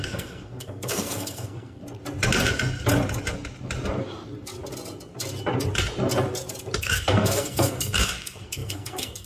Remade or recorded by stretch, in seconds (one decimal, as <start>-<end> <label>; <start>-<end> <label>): 0.0-1.8 remade; 1.8-6.8 recorded; 6.8-9.3 remade